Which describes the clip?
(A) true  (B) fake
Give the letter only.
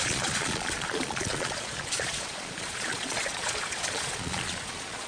B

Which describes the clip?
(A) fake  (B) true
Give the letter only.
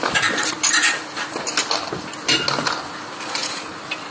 B